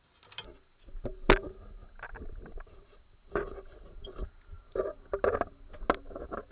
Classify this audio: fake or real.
real